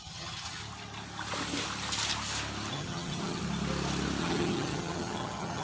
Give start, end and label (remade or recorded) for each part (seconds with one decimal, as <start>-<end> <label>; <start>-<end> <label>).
0.0-0.6 remade; 0.6-2.7 recorded; 2.7-3.4 remade; 3.4-4.2 recorded; 4.2-5.6 remade